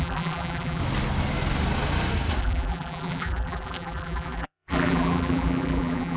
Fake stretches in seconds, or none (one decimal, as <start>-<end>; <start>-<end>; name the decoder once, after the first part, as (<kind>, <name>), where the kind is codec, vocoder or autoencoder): 0.0-0.8 (vocoder, BigVGAN v2); 2.4-6.2